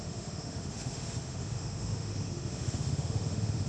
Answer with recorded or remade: remade